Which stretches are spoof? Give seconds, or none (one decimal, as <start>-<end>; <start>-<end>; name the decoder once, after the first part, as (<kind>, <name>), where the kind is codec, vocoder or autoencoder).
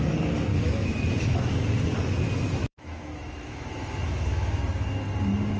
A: 0.5-1.5 (autoencoder, DAC-VAE); 2.6-4.6